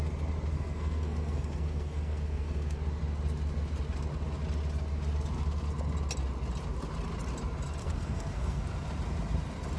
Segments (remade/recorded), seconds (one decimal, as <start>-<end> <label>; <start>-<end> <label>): 0.0-0.5 recorded; 0.5-2.8 remade; 2.8-7.8 recorded; 7.8-8.6 remade; 8.6-9.8 recorded